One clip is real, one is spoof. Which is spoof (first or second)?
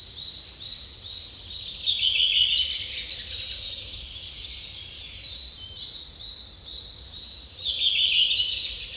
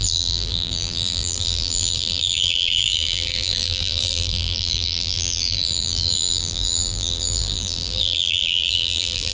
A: second